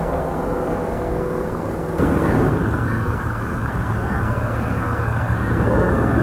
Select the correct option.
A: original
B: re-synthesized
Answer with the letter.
B